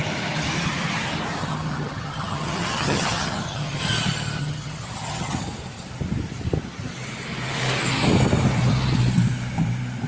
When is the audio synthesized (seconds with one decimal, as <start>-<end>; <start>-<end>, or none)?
1.4-3.8; 4.4-5.3

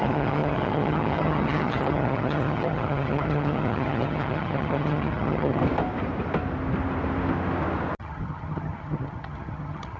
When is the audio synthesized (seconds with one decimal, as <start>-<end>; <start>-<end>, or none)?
0.0-5.6; 8.0-10.0

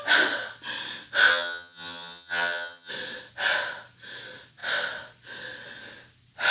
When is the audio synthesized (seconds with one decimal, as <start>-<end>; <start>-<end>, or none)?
1.3-2.9

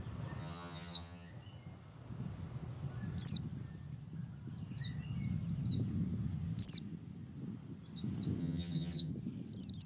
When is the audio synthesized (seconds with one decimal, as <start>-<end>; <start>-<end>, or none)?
0.4-1.3; 8.4-9.1

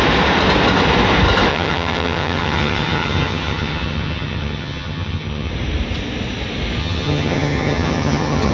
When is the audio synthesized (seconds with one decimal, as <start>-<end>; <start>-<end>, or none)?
1.5-5.5; 6.8-8.5